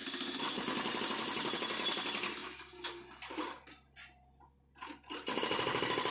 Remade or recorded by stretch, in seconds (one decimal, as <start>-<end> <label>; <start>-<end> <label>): 0.0-6.1 recorded